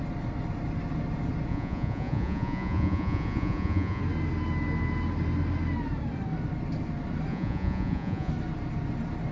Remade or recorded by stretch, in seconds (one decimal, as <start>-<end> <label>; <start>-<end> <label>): 0.0-1.5 recorded; 1.5-4.0 remade; 4.0-7.3 recorded; 7.3-8.3 remade; 8.3-9.3 recorded